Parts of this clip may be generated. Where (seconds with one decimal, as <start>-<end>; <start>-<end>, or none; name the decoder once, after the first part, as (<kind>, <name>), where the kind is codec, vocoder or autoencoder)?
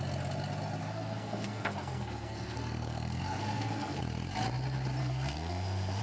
0.8-4.0 (codec, SNAC); 5.0-6.0